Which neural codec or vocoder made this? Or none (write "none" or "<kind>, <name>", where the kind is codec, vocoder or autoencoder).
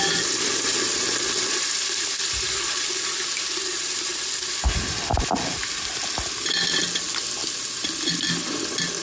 none